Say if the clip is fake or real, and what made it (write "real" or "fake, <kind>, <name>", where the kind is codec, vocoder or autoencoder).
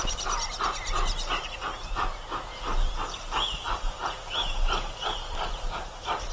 real